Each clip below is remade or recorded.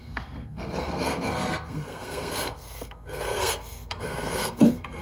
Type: remade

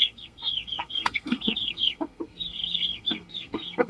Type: remade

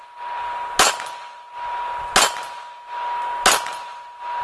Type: recorded